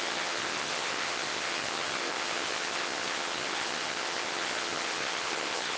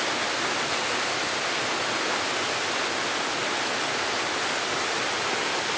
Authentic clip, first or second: second